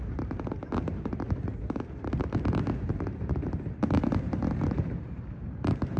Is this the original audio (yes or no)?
no